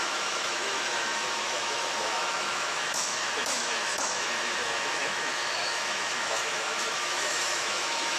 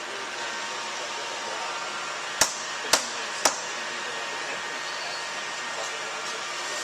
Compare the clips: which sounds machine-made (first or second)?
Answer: first